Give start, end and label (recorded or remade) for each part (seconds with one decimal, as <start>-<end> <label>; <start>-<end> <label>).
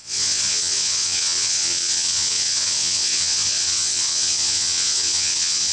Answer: 0.0-5.7 remade